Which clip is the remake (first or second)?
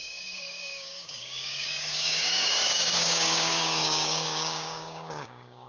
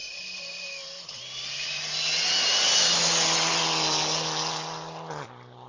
first